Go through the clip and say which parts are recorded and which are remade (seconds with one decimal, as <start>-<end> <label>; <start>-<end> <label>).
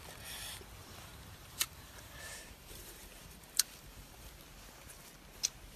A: 0.0-0.8 recorded; 0.8-4.3 remade; 4.3-5.8 recorded